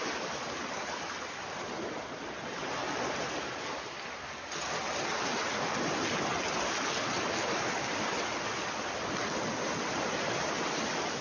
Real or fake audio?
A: real